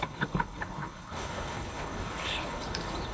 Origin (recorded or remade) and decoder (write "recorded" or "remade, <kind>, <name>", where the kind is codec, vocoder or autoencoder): remade, codec, HILCodec